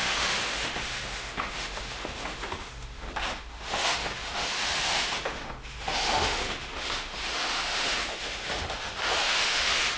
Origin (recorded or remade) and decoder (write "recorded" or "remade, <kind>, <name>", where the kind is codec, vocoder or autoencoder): remade, autoencoder, DAC-VAE